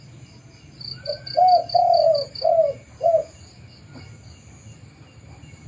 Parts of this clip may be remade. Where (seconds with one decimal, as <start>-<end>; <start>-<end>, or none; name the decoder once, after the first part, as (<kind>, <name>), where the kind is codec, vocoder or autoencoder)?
none